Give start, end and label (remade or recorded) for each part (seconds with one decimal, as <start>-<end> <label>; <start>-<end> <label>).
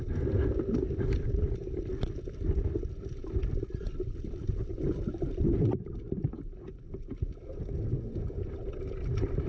0.0-4.7 recorded; 4.7-6.0 remade; 6.0-9.5 recorded